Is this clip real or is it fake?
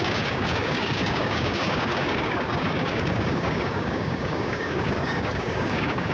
fake